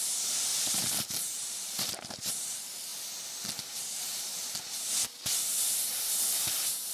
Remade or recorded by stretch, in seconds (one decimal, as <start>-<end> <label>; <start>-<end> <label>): 0.0-2.9 remade; 2.9-3.6 recorded; 3.6-4.3 remade; 4.3-6.9 recorded